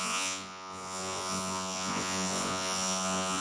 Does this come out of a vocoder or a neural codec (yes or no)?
yes